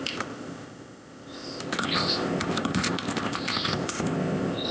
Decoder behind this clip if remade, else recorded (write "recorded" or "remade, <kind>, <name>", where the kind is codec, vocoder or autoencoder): remade, codec, ZipCodec